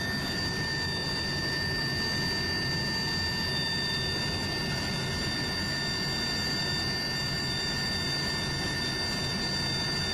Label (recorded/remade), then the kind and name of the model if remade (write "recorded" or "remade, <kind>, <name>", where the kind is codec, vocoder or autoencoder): recorded